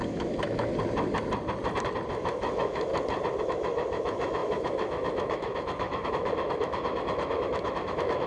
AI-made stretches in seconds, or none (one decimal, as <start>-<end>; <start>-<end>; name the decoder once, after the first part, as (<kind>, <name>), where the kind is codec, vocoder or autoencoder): 0.0-0.7 (autoencoder, DAC-VAE); 2.1-2.9; 3.4-8.3